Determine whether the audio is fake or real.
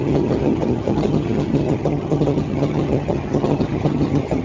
fake